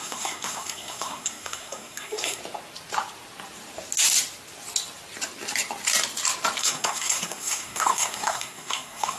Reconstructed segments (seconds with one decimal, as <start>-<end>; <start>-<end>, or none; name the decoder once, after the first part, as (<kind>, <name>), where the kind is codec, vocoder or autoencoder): 0.0-2.4 (codec, SNAC); 6.6-9.2